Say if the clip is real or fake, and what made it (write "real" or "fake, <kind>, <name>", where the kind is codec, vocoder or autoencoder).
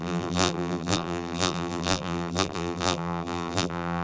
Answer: fake, vocoder, BigVGAN v2